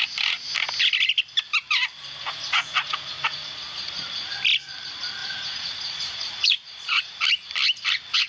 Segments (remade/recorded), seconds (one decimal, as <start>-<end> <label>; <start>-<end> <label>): 0.0-2.2 recorded; 2.2-4.3 remade; 4.3-5.2 recorded; 5.2-7.0 remade; 7.0-8.3 recorded